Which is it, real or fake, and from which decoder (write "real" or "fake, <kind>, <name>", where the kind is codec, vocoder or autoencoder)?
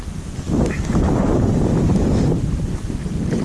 real